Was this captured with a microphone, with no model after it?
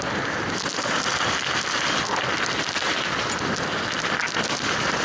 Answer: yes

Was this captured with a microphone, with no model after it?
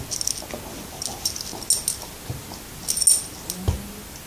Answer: yes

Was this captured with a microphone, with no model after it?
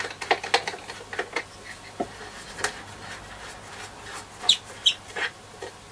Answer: yes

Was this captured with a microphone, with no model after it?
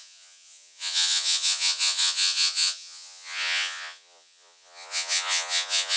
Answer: no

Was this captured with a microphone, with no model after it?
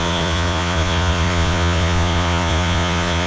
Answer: no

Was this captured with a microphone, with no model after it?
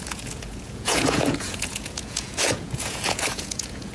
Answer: no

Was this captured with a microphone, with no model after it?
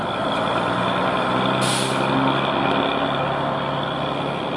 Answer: yes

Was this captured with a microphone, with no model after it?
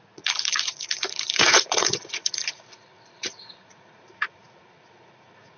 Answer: no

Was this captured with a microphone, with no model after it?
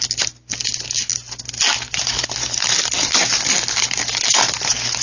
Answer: yes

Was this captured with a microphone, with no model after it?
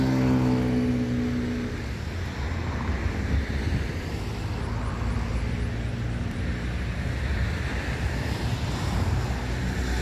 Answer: yes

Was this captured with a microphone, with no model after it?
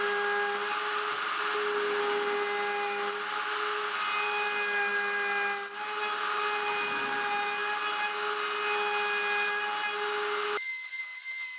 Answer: yes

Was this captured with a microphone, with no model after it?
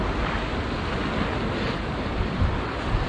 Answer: yes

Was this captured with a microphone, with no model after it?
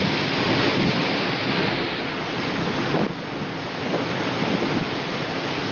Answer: yes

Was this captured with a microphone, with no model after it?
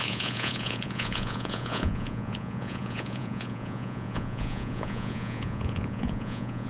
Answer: no